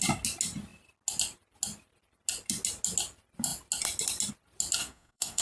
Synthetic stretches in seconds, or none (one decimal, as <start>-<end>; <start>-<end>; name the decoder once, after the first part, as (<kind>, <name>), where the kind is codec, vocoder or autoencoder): 4.8-5.4 (codec, SNAC)